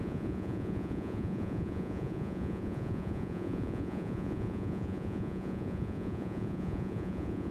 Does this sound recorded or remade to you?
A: remade